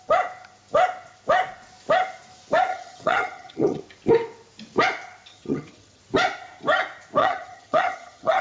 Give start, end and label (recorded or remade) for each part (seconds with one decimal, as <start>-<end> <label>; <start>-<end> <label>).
0.0-2.7 recorded; 2.7-3.8 remade; 3.8-5.3 recorded; 5.3-6.0 remade; 6.0-7.2 recorded; 7.2-8.4 remade